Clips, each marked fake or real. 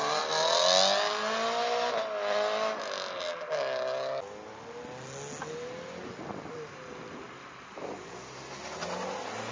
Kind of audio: real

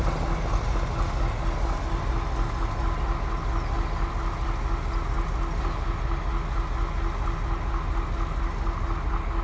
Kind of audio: real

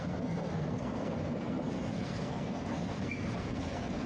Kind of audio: fake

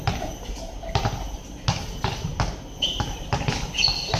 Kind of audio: real